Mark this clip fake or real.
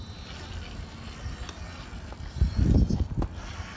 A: real